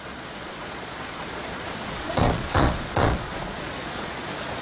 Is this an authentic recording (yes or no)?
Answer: no